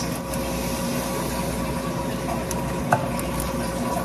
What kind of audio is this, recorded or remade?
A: recorded